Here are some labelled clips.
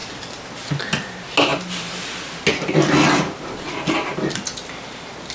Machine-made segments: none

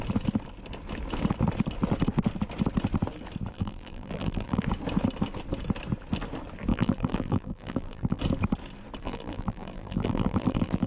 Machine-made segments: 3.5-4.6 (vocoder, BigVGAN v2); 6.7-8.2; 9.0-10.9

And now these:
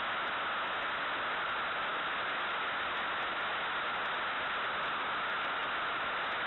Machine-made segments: none

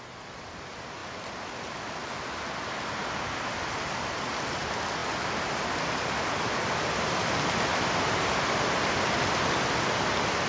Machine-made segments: none

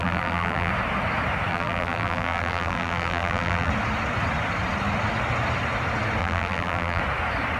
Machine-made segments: 0.0-0.7 (vocoder, BigVGAN v2); 1.5-3.7; 6.2-7.0